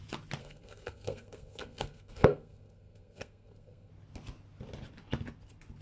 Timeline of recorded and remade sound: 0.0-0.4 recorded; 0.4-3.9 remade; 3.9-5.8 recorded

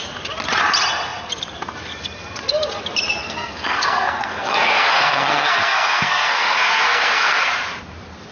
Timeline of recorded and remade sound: 0.0-3.2 recorded; 3.2-7.5 remade; 7.5-8.3 recorded